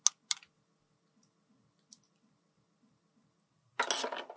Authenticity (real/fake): real